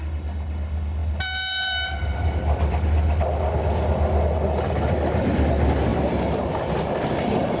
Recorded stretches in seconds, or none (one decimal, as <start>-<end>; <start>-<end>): 0.0-7.6